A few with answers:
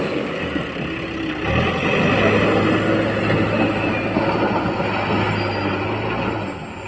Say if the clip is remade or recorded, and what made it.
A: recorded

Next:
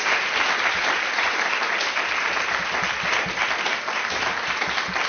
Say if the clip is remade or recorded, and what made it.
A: recorded